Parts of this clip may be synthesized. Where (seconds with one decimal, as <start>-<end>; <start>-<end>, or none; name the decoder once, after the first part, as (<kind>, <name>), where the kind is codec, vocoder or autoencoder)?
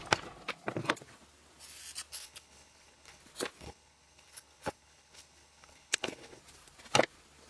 2.1-3.2 (codec, HILCodec); 3.6-6.4